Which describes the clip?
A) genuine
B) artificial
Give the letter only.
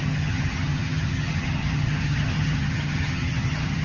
B